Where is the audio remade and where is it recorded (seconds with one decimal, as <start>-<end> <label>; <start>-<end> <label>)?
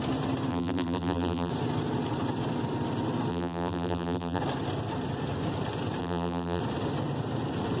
0.0-0.5 recorded; 0.5-1.5 remade; 1.5-3.3 recorded; 3.3-4.4 remade; 4.4-6.0 recorded; 6.0-6.6 remade; 6.6-7.8 recorded